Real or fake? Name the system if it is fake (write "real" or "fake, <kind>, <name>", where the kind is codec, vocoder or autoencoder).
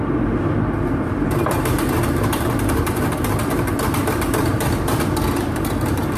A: fake, vocoder, BigVGAN v2